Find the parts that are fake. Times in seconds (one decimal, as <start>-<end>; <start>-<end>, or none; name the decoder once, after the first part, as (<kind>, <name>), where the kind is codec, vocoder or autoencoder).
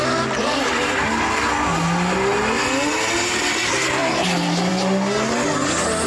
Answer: none